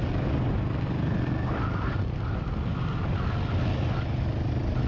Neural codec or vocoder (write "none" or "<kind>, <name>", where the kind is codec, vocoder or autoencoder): none